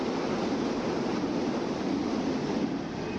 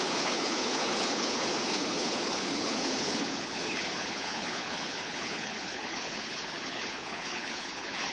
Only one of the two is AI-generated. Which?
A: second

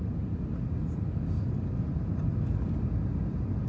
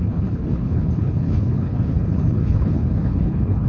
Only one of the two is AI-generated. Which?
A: second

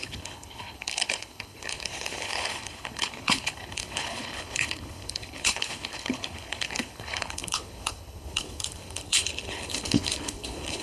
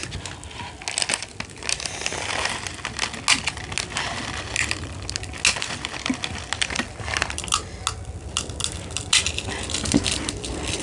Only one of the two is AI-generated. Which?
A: first